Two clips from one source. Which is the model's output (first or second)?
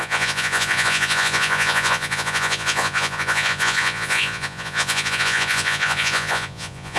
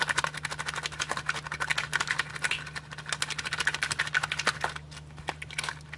first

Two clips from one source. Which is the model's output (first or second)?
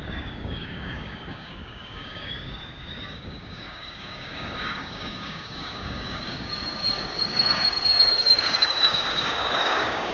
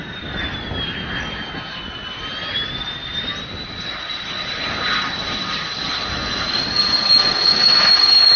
first